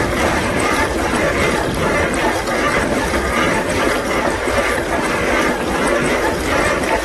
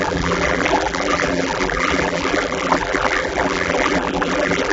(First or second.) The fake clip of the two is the second